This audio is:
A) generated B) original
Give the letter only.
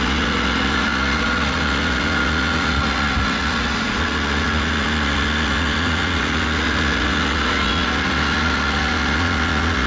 A